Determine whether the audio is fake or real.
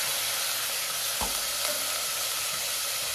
real